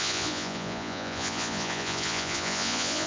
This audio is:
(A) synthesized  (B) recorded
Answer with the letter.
A